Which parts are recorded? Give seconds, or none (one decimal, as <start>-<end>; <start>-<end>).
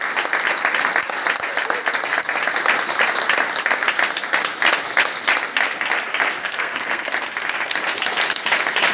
0.0-6.4; 7.1-8.9